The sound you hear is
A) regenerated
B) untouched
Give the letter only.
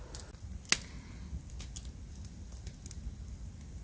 B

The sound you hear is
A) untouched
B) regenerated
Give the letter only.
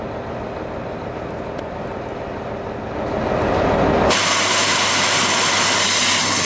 A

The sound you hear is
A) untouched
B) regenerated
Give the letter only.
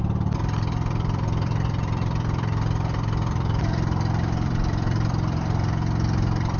B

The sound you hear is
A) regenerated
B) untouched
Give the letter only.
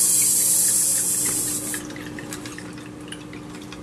B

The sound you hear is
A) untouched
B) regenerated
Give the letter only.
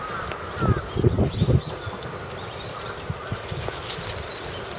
A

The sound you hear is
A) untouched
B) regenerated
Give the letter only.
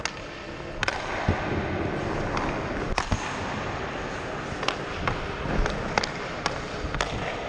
A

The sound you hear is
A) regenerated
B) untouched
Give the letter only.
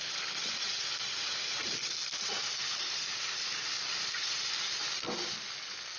A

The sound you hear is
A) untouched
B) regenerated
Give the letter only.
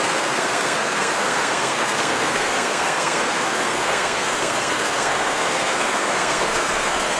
B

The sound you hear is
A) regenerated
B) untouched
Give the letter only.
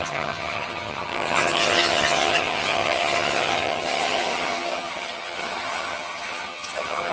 A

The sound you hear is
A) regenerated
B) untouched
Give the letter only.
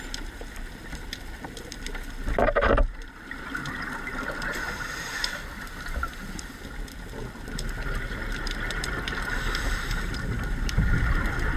B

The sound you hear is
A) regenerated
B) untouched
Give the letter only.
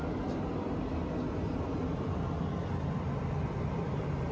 B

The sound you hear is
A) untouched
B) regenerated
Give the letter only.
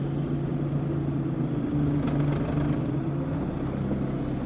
A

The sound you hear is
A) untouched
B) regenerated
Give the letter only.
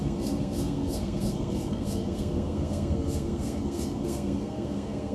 B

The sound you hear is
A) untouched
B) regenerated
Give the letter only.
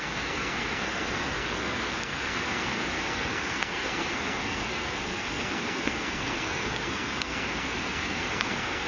B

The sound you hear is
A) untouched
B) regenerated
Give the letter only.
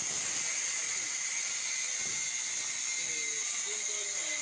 A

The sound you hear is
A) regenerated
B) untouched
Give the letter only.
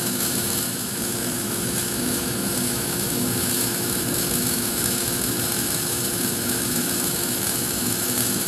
A